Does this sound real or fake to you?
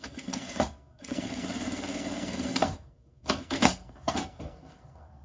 fake